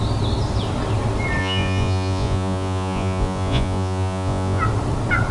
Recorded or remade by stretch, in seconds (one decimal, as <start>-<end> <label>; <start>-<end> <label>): 0.0-1.4 recorded; 1.4-4.6 remade; 4.6-5.3 recorded